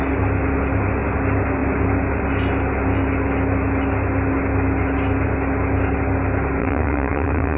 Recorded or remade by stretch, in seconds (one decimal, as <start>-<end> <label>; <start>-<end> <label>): 0.0-6.6 recorded; 6.6-7.6 remade